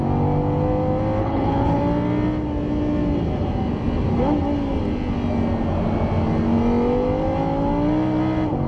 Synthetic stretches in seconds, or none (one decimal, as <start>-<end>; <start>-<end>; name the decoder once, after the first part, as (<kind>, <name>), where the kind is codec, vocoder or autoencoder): 1.2-1.8 (codec, HILCodec)